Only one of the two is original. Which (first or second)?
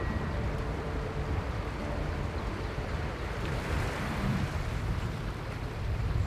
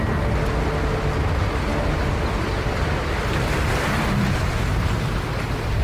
second